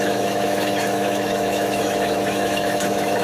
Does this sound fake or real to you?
fake